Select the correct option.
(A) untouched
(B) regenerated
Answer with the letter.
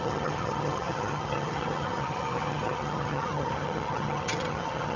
B